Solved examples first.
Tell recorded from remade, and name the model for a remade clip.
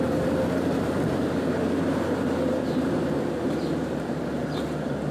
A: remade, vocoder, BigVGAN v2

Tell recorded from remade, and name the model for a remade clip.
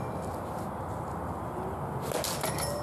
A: recorded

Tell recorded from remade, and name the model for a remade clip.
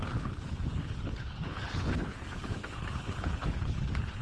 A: remade, codec, HILCodec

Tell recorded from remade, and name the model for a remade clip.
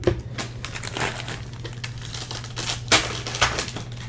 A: recorded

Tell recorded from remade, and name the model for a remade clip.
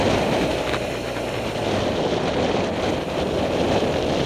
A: remade, vocoder, BigVGAN v2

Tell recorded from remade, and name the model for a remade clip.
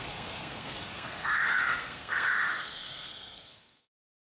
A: remade, codec, SNAC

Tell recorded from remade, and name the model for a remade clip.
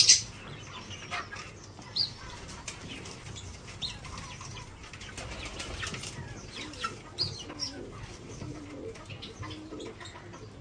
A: recorded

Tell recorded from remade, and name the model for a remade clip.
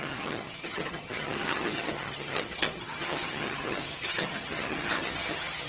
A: remade, vocoder, HiFi-GAN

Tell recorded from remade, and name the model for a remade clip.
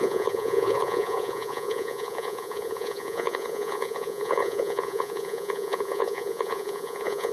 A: remade, vocoder, Vocos